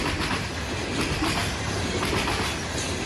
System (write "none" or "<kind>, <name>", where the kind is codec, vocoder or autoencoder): none